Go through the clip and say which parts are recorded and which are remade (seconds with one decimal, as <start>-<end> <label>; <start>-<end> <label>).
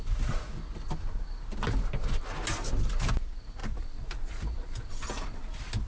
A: 0.0-3.6 recorded; 3.6-4.9 remade; 4.9-5.9 recorded